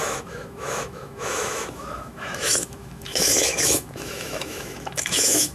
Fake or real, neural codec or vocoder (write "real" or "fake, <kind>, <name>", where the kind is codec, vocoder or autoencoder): fake, autoencoder, DAC-VAE